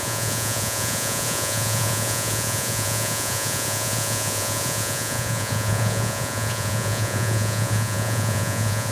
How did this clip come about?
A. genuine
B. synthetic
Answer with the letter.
B